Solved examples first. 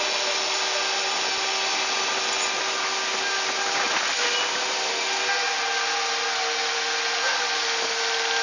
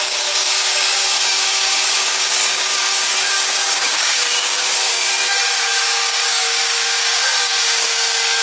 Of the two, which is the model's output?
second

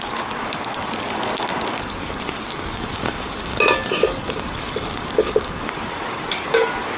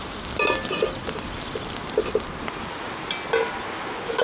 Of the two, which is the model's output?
first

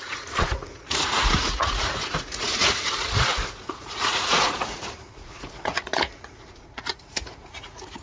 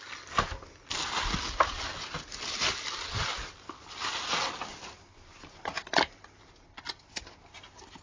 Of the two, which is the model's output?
first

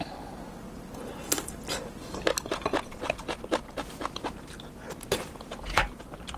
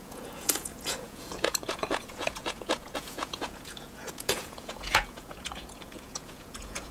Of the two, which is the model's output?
second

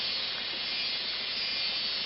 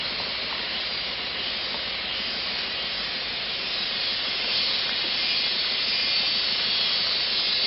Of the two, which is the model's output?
second